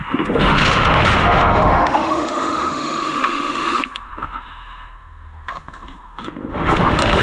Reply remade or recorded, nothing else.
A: remade